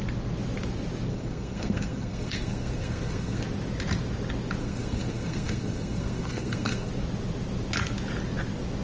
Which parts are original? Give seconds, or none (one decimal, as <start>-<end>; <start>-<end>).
0.0-1.1; 3.4-4.6; 6.9-8.8